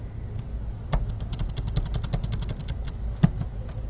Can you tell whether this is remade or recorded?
recorded